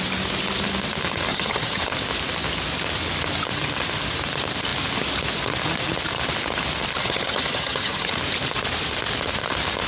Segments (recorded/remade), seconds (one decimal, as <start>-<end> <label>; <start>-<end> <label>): 0.0-1.3 recorded; 1.3-1.8 remade; 1.8-7.0 recorded; 7.0-8.1 remade; 8.1-9.9 recorded